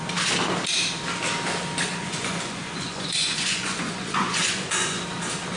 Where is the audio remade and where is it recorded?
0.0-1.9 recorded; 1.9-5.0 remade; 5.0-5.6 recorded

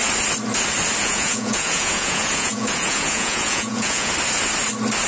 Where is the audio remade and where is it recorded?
0.0-1.0 recorded; 1.0-4.1 remade; 4.1-5.1 recorded

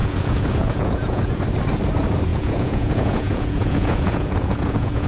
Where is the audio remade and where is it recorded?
0.0-1.4 remade; 1.4-2.3 recorded; 2.3-5.1 remade

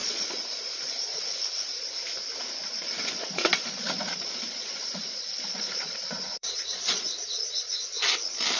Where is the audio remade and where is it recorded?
0.0-1.2 remade; 1.2-2.6 recorded; 2.6-7.7 remade; 7.7-8.6 recorded